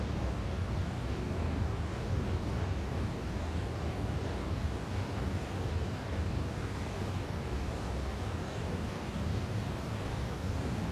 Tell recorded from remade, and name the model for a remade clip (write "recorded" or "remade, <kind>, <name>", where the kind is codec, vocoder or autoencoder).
remade, codec, DAC